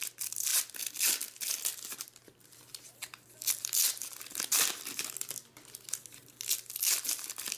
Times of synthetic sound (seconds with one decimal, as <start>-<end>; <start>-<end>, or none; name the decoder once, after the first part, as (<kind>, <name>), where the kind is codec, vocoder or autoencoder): none